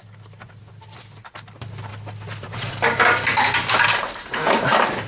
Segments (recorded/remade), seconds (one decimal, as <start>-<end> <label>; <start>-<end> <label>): 0.0-5.1 recorded